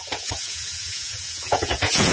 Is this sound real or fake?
fake